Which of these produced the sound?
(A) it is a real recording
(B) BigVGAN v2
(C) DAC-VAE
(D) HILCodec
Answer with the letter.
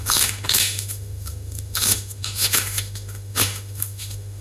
C